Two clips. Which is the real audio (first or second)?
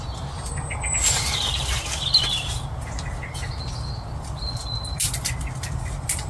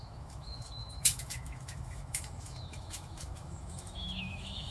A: first